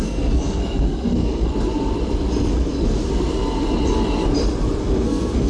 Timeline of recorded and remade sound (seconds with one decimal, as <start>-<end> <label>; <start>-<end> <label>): 0.0-1.5 remade; 1.5-4.8 recorded; 4.8-5.5 remade